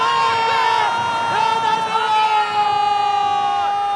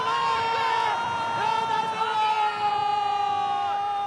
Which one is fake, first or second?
second